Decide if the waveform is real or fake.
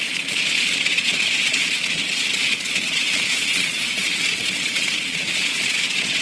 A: fake